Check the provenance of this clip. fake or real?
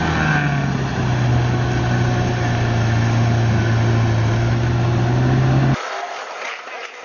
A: real